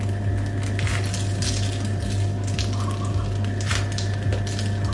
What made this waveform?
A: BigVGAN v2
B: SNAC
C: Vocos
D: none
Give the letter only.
D